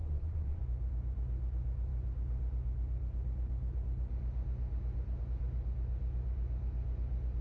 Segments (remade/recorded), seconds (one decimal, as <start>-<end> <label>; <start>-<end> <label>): 0.0-0.6 remade; 0.6-7.4 recorded